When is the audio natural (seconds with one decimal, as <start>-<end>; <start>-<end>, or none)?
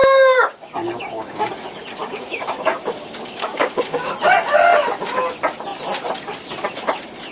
1.5-2.0; 4.1-7.3